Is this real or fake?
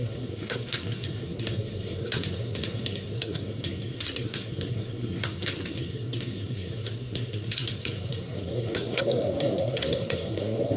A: fake